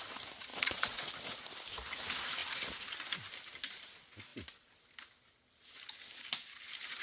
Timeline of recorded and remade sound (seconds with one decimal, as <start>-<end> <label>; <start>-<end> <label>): 0.0-0.5 recorded; 0.5-1.1 remade; 1.1-7.0 recorded